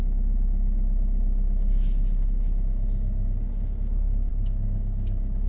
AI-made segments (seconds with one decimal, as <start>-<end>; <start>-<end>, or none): 4.3-5.5